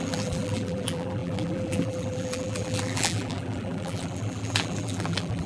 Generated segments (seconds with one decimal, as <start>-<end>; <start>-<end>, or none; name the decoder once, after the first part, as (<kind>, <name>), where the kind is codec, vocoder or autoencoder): 0.0-5.5 (vocoder, BigVGAN v2)

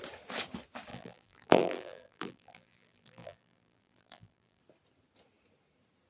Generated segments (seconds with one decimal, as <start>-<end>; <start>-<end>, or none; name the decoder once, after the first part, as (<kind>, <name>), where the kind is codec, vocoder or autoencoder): 0.9-4.6 (vocoder, BigVGAN v2)

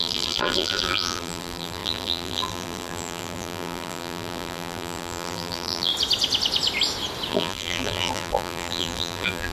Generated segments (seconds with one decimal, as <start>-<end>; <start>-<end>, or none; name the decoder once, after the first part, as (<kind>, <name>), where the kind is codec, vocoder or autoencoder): 0.0-5.9 (vocoder, BigVGAN v2); 7.3-9.5

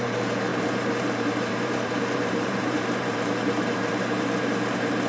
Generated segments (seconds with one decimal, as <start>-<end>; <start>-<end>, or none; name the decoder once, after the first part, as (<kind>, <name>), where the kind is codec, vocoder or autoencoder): 0.0-5.1 (vocoder, BigVGAN v2)

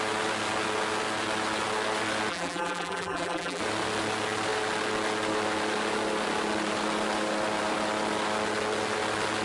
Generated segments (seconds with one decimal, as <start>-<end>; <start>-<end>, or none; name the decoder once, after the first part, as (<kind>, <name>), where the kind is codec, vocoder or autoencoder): 2.3-3.6 (vocoder, BigVGAN v2)

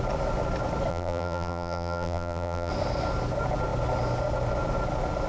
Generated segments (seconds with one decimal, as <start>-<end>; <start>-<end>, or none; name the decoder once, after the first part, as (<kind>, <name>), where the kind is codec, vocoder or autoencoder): 0.9-2.7 (vocoder, BigVGAN v2)

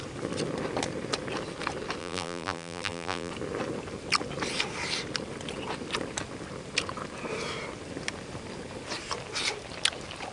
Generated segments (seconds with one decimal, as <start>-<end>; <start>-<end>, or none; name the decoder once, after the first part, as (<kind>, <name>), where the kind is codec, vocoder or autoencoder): 2.0-3.3 (vocoder, BigVGAN v2)

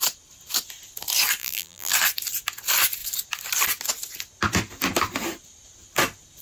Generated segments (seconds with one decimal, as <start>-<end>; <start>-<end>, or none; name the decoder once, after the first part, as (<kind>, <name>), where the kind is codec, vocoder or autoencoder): 1.4-1.9 (vocoder, BigVGAN v2)